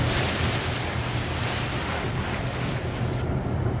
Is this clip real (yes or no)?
yes